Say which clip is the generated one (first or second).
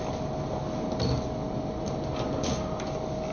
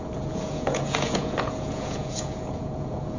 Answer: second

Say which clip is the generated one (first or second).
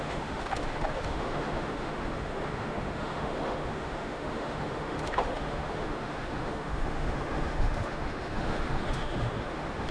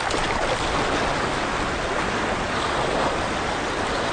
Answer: first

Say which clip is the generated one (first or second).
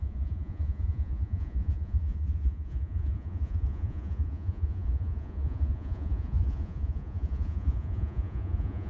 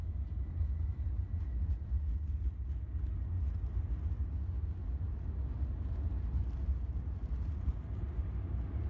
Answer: first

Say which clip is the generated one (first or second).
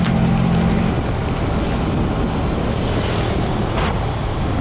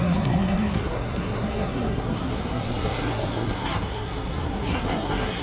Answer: second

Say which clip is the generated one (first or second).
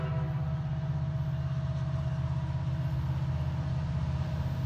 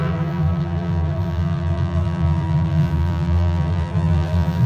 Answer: second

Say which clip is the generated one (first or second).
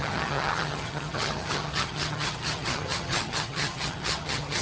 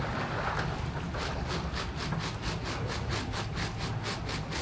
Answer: first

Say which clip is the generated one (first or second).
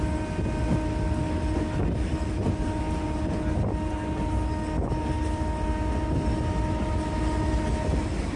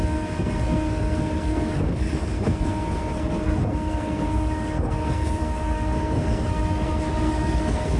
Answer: second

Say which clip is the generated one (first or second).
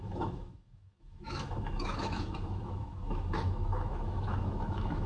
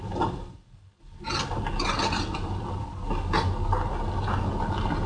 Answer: first